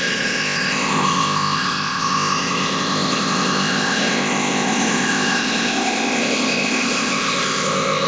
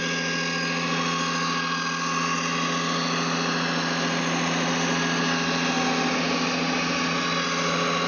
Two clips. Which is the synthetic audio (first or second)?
first